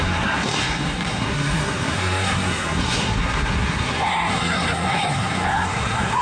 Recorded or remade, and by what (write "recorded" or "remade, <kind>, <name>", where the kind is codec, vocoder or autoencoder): remade, codec, SNAC